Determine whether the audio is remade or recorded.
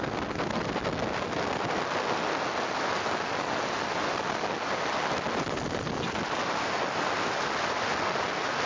recorded